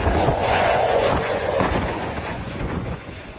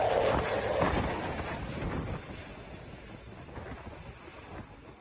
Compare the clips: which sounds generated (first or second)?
first